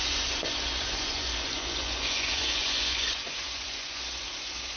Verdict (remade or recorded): remade